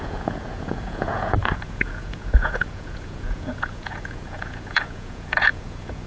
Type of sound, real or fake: fake